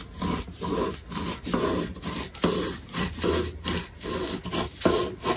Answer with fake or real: real